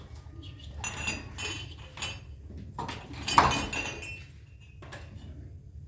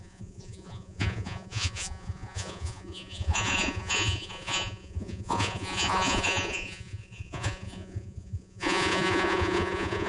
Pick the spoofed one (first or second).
second